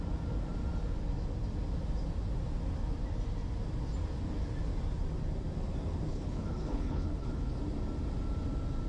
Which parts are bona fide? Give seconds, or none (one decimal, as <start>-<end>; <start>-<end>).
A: 0.0-6.1; 7.6-8.9